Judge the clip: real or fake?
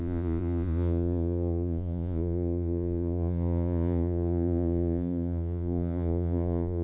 fake